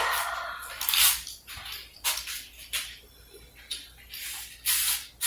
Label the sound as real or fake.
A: real